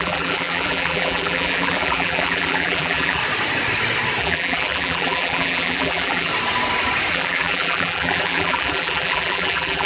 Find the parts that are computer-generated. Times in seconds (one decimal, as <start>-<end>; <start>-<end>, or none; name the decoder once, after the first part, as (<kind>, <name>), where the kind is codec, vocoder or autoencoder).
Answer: 0.0-3.2 (vocoder, BigVGAN v2); 4.2-6.3; 7.1-9.9